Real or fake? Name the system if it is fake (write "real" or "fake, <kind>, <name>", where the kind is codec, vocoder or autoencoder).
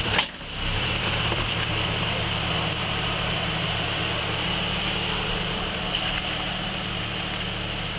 fake, vocoder, BigVGAN v2